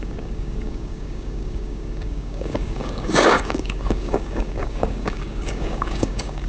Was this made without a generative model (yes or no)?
no